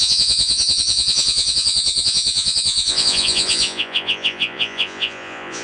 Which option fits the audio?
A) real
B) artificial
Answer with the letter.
B